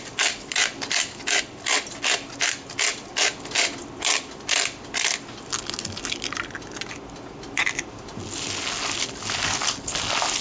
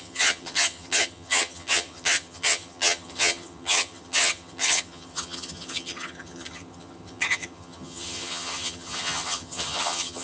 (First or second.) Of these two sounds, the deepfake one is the second